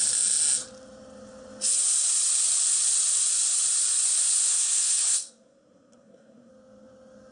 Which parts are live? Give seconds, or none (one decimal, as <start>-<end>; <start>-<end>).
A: 0.0-4.5; 6.5-7.3